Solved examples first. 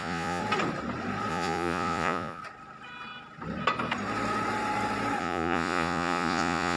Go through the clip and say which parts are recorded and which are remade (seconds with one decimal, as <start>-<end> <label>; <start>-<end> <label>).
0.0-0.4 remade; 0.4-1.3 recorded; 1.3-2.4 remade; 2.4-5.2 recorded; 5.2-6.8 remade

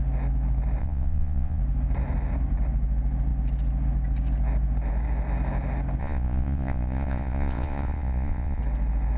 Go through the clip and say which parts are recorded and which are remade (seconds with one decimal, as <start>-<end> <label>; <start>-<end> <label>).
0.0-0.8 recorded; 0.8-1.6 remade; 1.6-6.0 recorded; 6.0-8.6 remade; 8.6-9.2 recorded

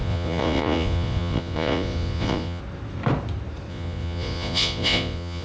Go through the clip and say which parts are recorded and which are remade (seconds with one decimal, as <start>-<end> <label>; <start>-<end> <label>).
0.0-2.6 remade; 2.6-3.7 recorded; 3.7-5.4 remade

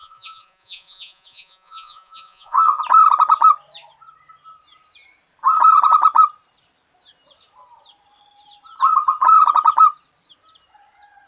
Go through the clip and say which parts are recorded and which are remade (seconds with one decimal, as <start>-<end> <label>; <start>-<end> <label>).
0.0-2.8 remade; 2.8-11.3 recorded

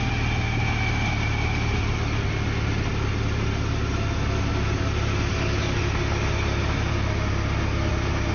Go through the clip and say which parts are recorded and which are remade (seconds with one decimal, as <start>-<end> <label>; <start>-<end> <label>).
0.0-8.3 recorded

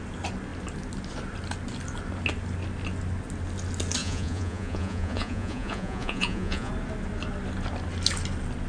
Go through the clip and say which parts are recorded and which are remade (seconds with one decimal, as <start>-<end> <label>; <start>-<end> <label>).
0.0-4.0 recorded; 4.0-6.7 remade; 6.7-8.7 recorded

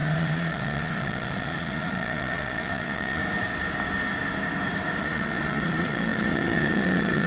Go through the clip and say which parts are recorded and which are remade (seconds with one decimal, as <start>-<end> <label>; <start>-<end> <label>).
0.0-3.2 remade; 3.2-5.0 recorded; 5.0-7.3 remade

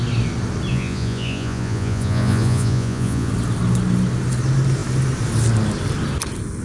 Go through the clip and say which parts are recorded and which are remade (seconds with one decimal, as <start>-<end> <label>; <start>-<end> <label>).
0.0-0.7 recorded; 0.7-3.3 remade; 3.3-6.6 recorded